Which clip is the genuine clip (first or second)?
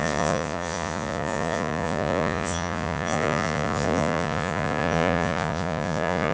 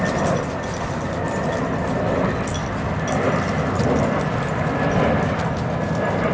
second